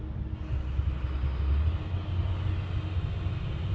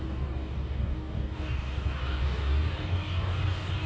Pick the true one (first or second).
first